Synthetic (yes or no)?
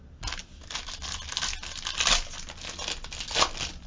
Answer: no